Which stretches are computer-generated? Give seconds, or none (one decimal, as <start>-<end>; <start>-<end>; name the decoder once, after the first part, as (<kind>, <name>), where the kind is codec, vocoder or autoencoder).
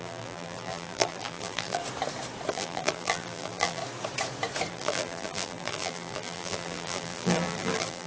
0.0-1.8 (vocoder, BigVGAN v2); 2.5-3.8; 4.7-8.1